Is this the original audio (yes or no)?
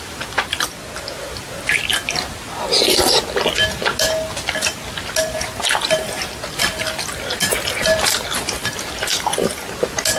yes